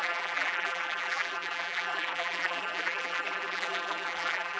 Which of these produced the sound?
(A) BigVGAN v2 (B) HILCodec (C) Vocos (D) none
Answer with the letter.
A